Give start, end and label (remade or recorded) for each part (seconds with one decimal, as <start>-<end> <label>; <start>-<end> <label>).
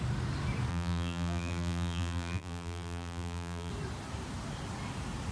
0.0-0.7 recorded; 0.7-3.7 remade; 3.7-5.3 recorded